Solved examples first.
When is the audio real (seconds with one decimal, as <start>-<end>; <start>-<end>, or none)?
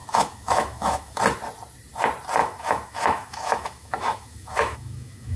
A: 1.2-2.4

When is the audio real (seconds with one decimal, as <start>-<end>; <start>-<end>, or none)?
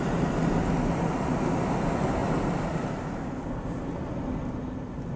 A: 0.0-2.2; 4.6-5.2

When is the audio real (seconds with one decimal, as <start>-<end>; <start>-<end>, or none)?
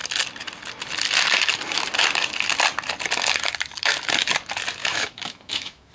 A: 0.0-4.8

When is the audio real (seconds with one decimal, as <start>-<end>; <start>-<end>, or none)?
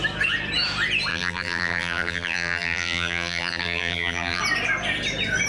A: 0.0-1.1; 4.4-5.5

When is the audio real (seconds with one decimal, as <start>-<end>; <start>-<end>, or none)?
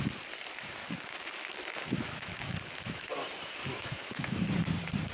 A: 0.0-0.8; 3.1-3.6; 4.4-5.1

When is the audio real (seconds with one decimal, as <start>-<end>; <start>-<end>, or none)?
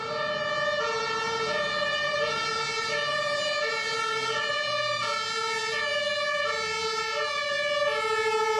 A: 0.0-8.6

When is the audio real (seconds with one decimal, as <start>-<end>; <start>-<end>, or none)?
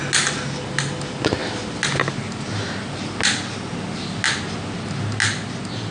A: 0.0-5.9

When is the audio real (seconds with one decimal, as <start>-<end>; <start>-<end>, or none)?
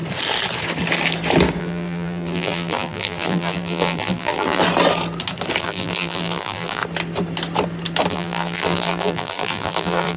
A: 0.0-1.6; 4.6-5.6; 6.8-8.1